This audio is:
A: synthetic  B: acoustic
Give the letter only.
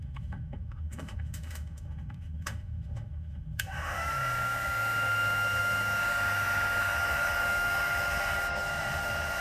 A